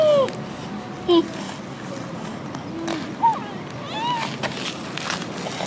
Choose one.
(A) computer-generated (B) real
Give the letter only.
B